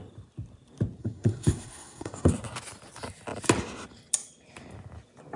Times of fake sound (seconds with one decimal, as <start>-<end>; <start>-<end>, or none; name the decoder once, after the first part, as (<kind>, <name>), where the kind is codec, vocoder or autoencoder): 1.0-2.3 (codec, SNAC)